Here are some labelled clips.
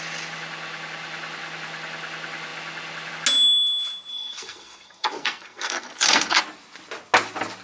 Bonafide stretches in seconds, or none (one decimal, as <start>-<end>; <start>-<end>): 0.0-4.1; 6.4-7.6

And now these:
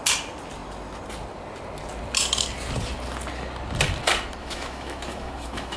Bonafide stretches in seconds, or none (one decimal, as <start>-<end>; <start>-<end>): 0.0-4.4

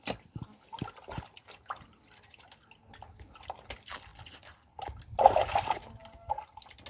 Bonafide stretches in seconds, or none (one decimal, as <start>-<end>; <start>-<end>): 0.0-6.9

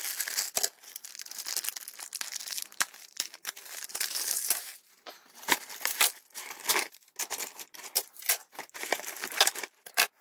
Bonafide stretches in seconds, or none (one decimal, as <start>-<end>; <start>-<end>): 0.0-2.4; 6.0-6.7